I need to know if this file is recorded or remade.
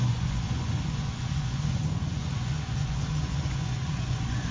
remade